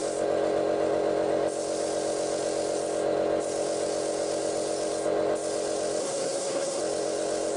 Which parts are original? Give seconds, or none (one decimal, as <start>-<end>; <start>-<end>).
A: 0.0-6.0; 6.8-7.6